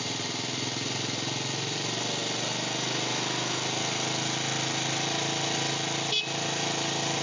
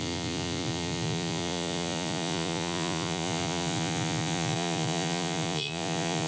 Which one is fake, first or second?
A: second